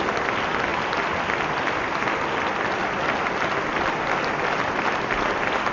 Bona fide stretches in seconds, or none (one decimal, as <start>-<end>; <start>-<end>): 0.0-5.7